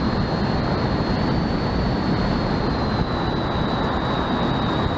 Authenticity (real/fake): real